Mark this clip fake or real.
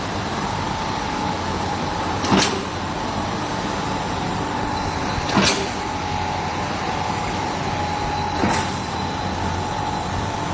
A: real